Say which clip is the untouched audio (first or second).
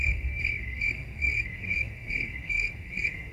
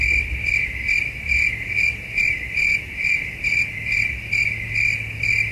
second